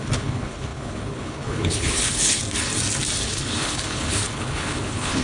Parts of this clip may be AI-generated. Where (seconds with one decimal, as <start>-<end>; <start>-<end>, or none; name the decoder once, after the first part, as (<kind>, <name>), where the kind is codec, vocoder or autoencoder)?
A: 0.0-2.4 (codec, HILCodec); 3.2-5.2